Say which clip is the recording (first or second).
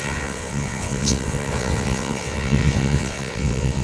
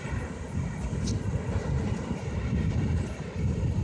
second